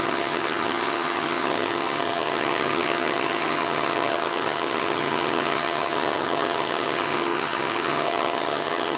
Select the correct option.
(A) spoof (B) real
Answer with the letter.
A